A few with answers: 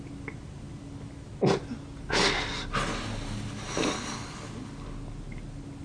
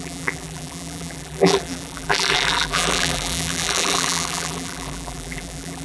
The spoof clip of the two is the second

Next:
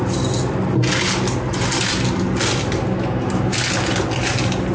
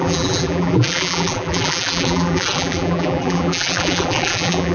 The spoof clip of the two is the second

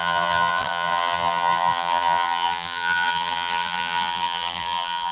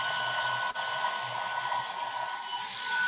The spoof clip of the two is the first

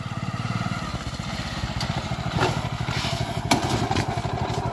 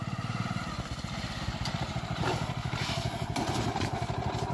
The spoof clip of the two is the second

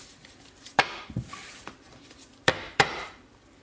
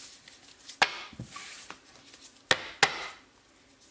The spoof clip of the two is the first